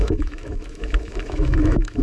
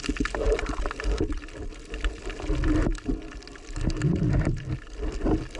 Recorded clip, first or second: second